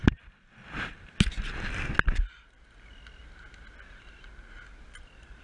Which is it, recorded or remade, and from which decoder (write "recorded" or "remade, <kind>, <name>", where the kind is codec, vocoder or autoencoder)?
recorded